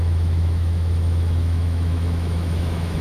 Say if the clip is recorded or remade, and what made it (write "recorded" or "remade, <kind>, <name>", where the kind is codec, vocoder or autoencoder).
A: remade, autoencoder, DAC-VAE